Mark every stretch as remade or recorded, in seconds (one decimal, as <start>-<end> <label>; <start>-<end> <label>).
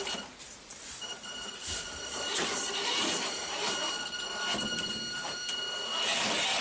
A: 0.0-0.7 recorded; 0.7-2.6 remade; 2.6-4.6 recorded; 4.6-5.5 remade; 5.5-6.6 recorded